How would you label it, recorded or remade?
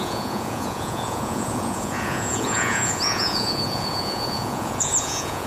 remade